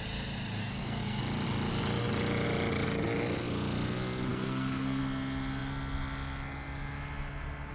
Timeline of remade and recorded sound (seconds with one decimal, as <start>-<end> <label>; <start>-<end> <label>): 0.0-0.6 recorded; 0.6-1.2 remade; 1.2-4.3 recorded; 4.3-5.0 remade; 5.0-7.7 recorded